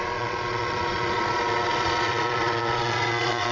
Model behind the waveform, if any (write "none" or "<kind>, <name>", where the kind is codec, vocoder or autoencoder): vocoder, Vocos